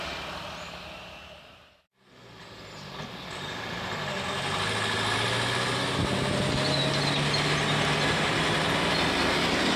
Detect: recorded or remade recorded